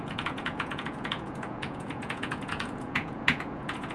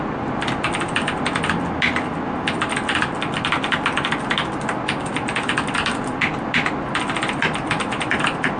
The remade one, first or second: first